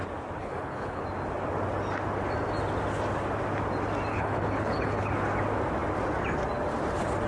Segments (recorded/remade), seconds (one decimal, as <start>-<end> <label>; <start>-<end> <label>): 0.0-0.4 recorded; 0.4-1.0 remade; 1.0-4.1 recorded; 4.1-5.1 remade; 5.1-7.3 recorded